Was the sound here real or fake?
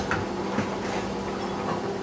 real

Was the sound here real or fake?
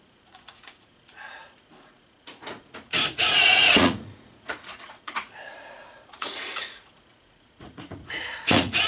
fake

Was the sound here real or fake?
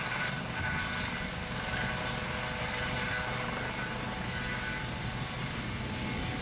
real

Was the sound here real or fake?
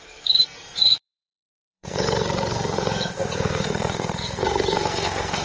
fake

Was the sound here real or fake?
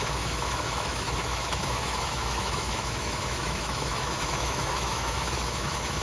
fake